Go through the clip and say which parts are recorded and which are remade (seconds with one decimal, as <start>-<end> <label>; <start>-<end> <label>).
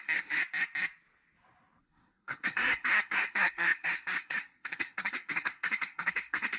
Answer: 0.0-0.4 remade; 0.4-1.8 recorded; 1.8-6.6 remade